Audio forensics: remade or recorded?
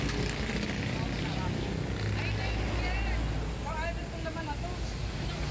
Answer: recorded